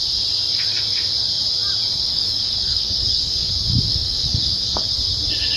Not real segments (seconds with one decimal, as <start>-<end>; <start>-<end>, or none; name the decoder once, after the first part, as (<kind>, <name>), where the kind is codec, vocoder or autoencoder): 2.1-3.5 (codec, DAC); 3.9-4.9